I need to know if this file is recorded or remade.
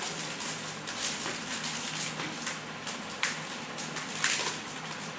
recorded